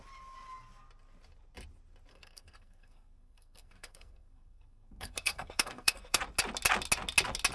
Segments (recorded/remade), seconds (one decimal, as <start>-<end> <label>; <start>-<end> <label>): 0.0-2.1 recorded; 2.1-6.2 remade; 6.2-7.5 recorded